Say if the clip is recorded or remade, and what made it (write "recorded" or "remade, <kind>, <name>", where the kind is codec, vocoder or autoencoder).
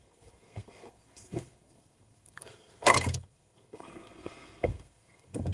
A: remade, codec, SNAC